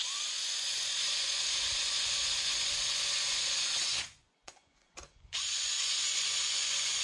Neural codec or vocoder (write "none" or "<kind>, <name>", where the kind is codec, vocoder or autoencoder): vocoder, Vocos